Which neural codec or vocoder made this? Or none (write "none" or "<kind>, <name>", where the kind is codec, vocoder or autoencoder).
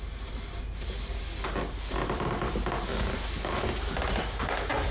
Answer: none